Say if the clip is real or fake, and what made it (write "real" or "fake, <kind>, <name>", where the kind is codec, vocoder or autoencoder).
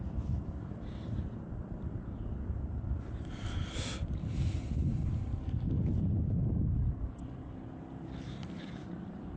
real